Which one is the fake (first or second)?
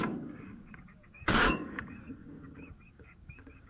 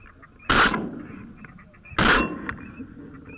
first